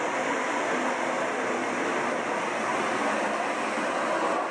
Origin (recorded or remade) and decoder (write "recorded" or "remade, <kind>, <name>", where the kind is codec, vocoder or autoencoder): recorded